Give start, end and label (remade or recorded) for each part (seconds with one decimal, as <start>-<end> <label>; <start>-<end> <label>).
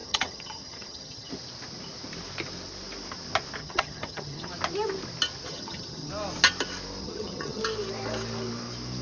0.0-1.3 remade; 1.3-3.6 recorded; 3.6-4.5 remade; 4.5-5.5 recorded; 5.5-6.1 remade; 6.1-7.0 recorded; 7.0-7.6 remade; 7.6-9.0 recorded